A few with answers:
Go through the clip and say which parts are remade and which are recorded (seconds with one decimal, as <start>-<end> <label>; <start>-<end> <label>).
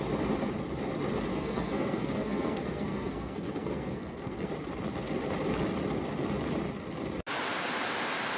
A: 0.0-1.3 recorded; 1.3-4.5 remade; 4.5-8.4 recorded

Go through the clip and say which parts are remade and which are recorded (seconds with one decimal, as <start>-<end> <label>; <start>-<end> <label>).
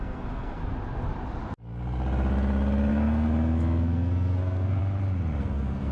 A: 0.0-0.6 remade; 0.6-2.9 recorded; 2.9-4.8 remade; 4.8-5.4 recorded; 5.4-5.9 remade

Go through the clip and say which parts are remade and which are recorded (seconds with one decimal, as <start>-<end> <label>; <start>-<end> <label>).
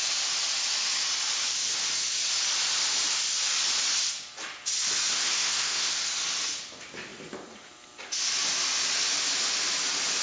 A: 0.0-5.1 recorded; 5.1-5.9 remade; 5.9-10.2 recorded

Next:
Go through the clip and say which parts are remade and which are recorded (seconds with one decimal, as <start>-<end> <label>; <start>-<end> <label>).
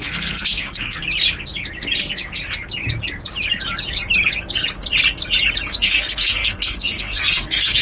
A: 0.0-1.0 remade; 1.0-5.7 recorded; 5.7-7.8 remade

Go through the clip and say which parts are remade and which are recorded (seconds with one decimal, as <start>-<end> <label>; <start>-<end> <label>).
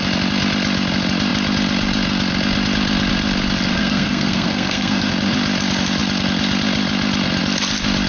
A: 0.0-3.7 recorded; 3.7-5.1 remade; 5.1-8.1 recorded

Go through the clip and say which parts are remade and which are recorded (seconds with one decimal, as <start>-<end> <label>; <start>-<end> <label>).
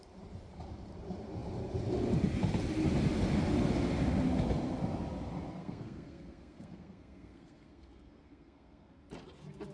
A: 0.0-5.6 recorded; 5.6-9.0 remade; 9.0-9.7 recorded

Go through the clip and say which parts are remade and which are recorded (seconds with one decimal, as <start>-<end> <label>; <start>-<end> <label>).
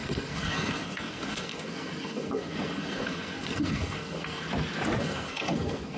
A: 0.0-4.5 remade; 4.5-5.0 recorded; 5.0-6.0 remade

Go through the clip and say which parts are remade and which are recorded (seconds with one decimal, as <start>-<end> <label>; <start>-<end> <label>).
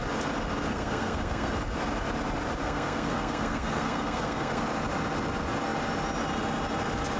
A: 0.0-0.7 recorded; 0.7-1.5 remade; 1.5-2.6 recorded; 2.6-4.6 remade; 4.6-7.2 recorded